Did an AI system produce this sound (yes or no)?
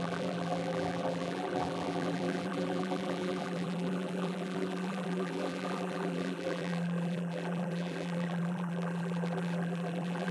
yes